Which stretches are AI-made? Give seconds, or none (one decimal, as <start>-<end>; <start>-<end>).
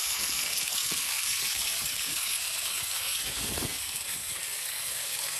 0.0-5.4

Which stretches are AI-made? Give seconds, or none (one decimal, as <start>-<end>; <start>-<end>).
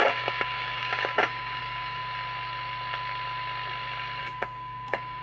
0.0-2.0; 4.2-5.2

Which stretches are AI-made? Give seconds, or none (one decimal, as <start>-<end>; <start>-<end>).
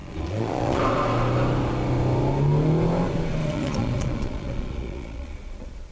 0.0-0.8; 3.4-5.9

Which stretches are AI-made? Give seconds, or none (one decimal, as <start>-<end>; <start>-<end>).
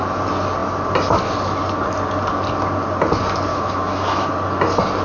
3.5-4.3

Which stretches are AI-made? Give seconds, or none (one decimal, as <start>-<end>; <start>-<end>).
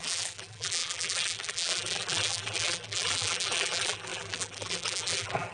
0.0-5.5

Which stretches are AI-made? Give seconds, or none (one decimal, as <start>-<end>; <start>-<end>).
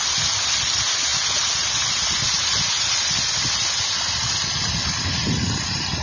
none